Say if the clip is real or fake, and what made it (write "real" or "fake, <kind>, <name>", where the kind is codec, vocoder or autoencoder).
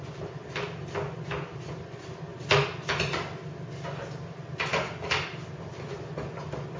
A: real